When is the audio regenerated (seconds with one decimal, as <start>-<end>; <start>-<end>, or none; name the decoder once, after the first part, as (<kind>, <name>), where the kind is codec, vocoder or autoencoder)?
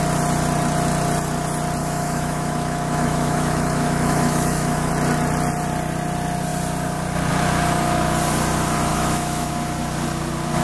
1.8-4.9 (autoencoder, DAC-VAE); 8.9-9.5